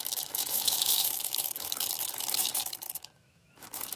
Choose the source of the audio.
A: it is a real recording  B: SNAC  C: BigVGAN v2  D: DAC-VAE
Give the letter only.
D